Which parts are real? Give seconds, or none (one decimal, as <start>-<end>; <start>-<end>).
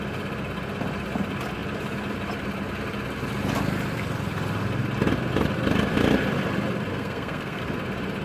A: 0.0-6.9; 7.6-8.2